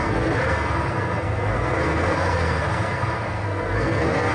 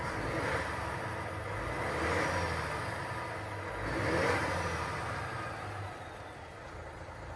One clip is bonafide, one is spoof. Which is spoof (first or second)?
first